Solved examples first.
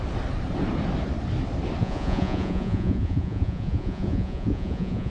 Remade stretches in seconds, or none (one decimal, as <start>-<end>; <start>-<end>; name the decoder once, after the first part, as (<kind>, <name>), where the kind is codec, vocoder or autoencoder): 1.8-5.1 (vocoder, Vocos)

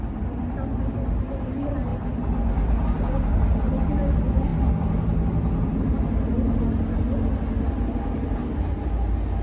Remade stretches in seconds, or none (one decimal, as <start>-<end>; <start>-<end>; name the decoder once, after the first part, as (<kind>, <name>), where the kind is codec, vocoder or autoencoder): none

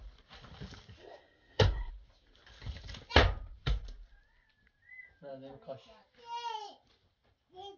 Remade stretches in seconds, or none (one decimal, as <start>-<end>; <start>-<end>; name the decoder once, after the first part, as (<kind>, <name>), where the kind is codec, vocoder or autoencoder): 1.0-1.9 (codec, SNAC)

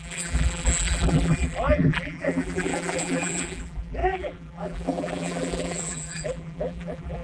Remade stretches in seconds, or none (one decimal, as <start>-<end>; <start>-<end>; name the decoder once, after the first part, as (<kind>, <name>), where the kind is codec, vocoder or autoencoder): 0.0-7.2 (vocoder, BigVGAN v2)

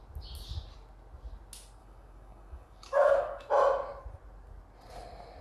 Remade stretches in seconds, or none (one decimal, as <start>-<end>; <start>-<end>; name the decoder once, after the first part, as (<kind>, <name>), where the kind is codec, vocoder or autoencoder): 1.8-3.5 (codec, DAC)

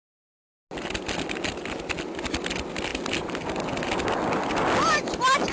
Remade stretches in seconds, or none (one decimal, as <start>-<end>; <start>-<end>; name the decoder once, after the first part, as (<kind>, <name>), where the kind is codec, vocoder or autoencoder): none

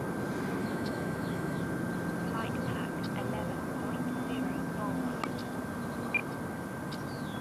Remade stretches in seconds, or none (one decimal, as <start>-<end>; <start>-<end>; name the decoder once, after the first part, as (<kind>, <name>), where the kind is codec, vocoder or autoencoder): 0.6-1.6 (autoencoder, DAC-VAE)